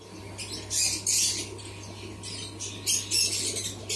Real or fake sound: real